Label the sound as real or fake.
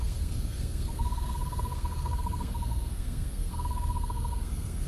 fake